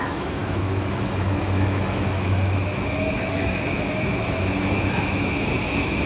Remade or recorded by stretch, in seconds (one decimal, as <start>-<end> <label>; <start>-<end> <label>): 0.0-6.1 remade